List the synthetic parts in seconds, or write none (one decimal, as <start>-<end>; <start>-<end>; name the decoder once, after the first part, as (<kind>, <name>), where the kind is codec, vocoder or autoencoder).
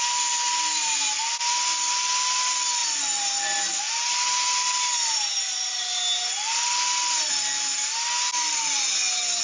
none